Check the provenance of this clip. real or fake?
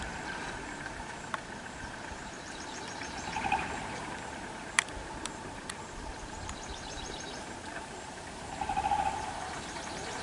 fake